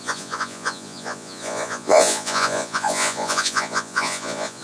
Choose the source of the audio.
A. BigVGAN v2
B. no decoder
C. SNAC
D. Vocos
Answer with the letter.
D